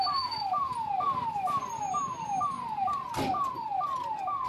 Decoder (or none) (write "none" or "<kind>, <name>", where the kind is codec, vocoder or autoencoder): none